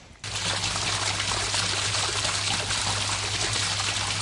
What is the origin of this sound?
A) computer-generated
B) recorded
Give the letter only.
B